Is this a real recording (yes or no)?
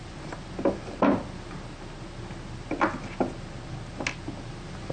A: yes